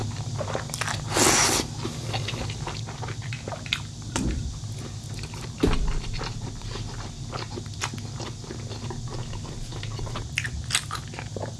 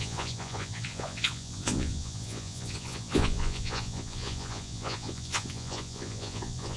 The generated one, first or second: second